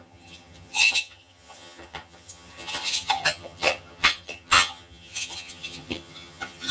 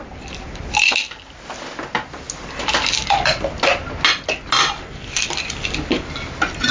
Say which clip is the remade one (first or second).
first